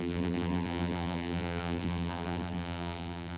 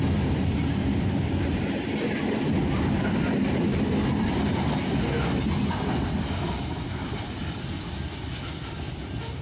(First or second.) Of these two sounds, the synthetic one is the first